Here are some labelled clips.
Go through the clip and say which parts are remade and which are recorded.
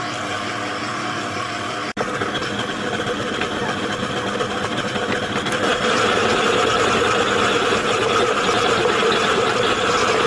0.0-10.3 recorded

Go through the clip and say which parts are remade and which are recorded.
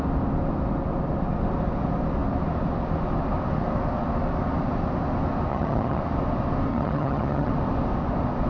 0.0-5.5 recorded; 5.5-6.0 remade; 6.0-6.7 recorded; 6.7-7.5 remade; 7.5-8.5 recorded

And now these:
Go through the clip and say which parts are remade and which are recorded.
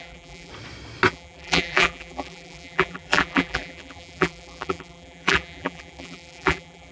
0.0-0.5 remade; 0.5-1.1 recorded; 1.1-6.9 remade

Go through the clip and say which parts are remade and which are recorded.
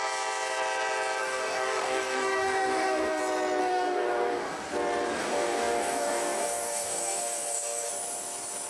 0.0-1.2 recorded; 1.2-3.2 remade; 3.2-3.6 recorded; 3.6-4.6 remade; 4.6-5.2 recorded; 5.2-7.9 remade; 7.9-8.7 recorded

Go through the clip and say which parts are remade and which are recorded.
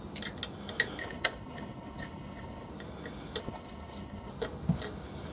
0.0-1.0 recorded; 1.0-2.7 remade; 2.7-3.4 recorded; 3.4-4.3 remade; 4.3-5.3 recorded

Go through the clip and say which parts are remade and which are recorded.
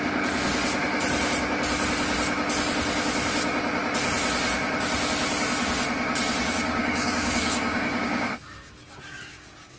0.0-6.8 recorded; 6.8-9.8 remade